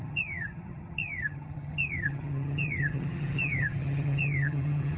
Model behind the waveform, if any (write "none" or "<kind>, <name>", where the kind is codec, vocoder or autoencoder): vocoder, HiFi-GAN